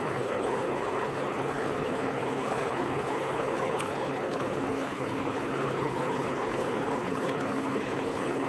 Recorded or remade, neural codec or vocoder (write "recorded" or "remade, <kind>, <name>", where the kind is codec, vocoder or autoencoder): remade, codec, HILCodec